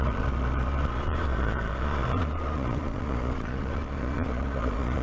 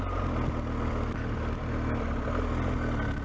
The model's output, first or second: first